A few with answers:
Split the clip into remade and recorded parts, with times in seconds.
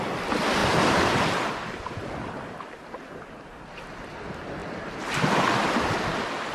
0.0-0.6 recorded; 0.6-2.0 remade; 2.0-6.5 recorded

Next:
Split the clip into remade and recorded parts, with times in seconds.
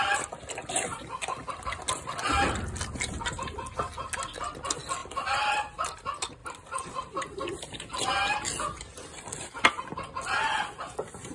0.0-0.9 recorded; 0.9-1.5 remade; 1.5-6.4 recorded; 6.4-8.1 remade; 8.1-11.3 recorded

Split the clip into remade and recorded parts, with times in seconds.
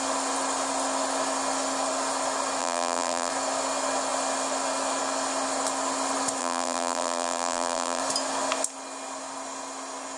0.0-2.6 recorded; 2.6-3.3 remade; 3.3-6.4 recorded; 6.4-8.0 remade; 8.0-10.2 recorded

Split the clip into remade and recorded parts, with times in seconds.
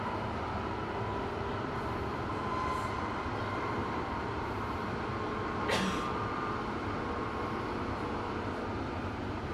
0.0-3.8 recorded; 3.8-5.0 remade; 5.0-9.5 recorded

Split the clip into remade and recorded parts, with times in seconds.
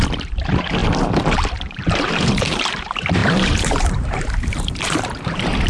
0.0-0.8 remade; 0.8-1.5 recorded; 1.5-5.7 remade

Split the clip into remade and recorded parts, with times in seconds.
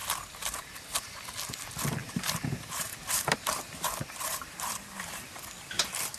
0.0-2.0 recorded; 2.0-5.3 remade; 5.3-6.2 recorded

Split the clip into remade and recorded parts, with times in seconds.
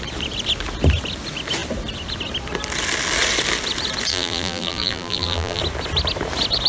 0.0-4.1 recorded; 4.1-5.6 remade; 5.6-6.7 recorded